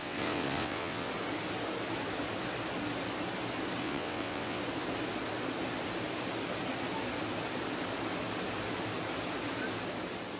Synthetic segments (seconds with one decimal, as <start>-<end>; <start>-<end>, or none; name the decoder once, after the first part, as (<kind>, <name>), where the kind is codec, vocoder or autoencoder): 0.0-1.1 (vocoder, WaveNeXt); 3.8-4.6